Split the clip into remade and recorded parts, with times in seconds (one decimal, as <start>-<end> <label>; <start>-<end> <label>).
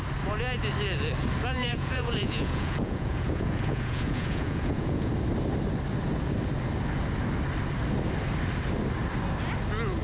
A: 0.0-1.6 recorded; 1.6-5.1 remade; 5.1-10.0 recorded